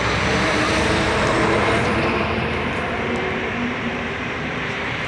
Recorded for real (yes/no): no